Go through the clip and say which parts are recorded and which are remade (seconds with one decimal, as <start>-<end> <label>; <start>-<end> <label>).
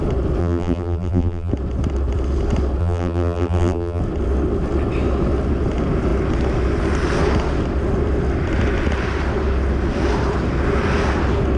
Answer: 0.0-0.4 recorded; 0.4-1.5 remade; 1.5-2.8 recorded; 2.8-4.0 remade; 4.0-11.6 recorded